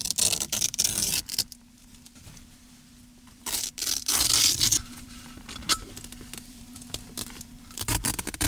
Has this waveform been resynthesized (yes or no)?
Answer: yes